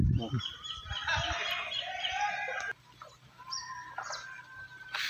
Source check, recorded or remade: recorded